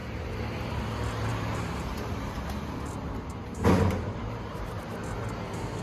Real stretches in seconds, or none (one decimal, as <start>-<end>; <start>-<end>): 0.8-1.3; 4.8-5.8